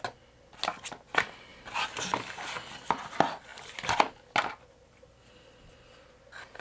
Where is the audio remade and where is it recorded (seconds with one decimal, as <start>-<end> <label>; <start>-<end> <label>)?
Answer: 0.0-6.6 recorded

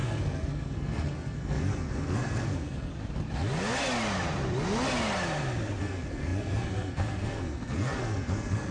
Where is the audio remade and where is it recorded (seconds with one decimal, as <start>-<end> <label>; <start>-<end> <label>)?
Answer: 0.0-2.9 remade; 2.9-5.8 recorded; 5.8-8.7 remade

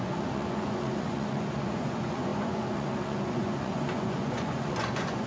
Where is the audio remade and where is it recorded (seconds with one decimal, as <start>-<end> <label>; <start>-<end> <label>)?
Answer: 0.0-5.3 remade

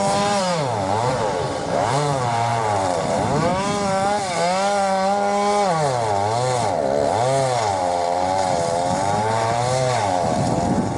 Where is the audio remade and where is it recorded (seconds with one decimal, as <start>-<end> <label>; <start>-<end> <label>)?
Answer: 0.0-3.5 remade; 3.5-7.7 recorded; 7.7-11.0 remade

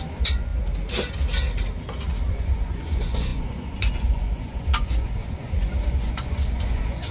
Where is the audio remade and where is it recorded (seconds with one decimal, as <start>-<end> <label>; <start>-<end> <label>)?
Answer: 0.0-0.5 remade; 0.5-2.3 recorded; 2.3-7.1 remade

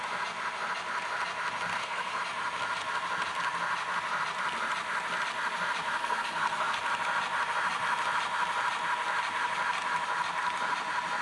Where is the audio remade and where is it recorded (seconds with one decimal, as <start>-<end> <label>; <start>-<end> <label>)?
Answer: 0.0-1.7 recorded; 1.7-2.2 remade; 2.2-6.0 recorded; 6.0-6.8 remade; 6.8-11.2 recorded

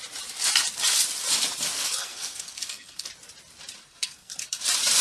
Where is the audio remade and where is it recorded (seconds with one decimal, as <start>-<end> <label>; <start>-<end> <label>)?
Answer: 0.0-1.7 recorded; 1.7-3.1 remade; 3.1-3.8 recorded; 3.8-4.6 remade; 4.6-5.0 recorded